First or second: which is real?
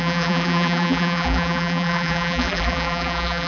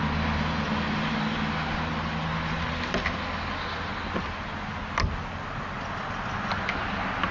second